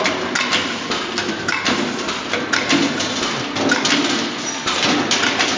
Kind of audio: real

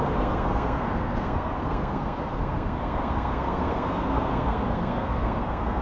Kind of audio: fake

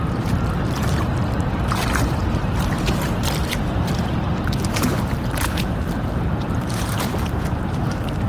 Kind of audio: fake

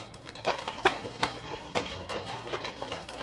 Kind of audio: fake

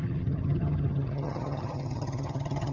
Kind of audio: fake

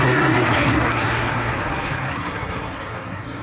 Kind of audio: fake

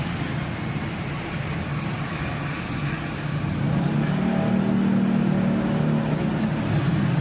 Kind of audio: real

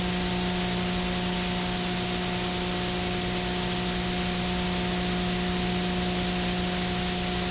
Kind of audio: real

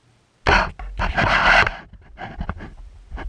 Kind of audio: real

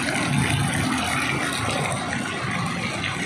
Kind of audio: real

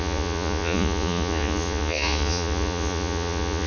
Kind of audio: fake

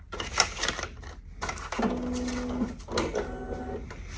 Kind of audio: real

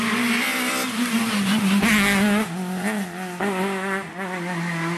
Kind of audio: real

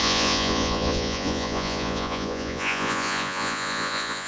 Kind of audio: fake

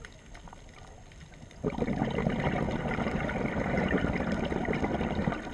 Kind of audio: real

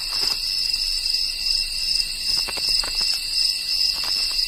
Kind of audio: real